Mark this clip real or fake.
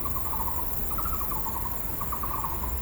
real